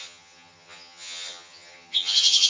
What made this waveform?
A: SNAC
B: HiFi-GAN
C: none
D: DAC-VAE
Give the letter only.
B